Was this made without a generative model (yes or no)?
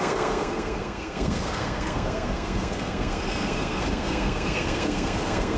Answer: no